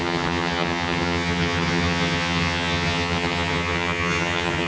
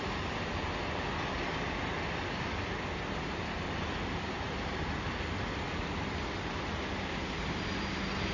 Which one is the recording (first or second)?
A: second